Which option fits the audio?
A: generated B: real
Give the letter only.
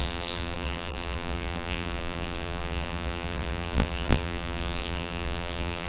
A